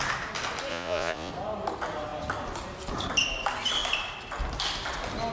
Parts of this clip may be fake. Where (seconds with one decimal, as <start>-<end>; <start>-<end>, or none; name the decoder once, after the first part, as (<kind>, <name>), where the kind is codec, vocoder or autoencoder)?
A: 0.7-1.3 (vocoder, Vocos)